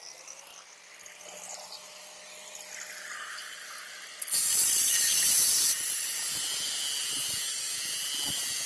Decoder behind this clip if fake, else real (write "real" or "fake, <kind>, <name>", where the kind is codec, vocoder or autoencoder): real